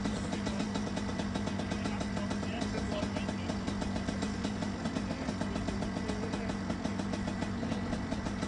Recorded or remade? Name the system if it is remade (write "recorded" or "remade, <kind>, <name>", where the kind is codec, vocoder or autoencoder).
recorded